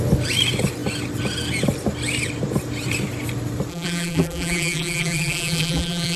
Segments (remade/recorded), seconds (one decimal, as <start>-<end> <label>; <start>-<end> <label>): 0.0-3.7 recorded; 3.7-6.2 remade